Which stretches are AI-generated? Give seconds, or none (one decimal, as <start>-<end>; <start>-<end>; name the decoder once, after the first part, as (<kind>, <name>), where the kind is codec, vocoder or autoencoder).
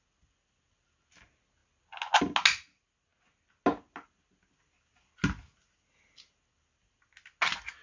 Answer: none